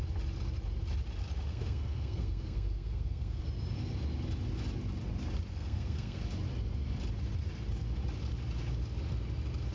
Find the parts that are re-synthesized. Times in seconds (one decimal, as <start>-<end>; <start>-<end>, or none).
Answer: 1.5-3.4; 5.5-6.2